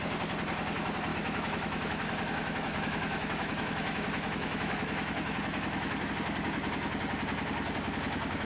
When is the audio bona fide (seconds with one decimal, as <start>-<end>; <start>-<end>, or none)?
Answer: 0.0-1.1; 6.1-8.4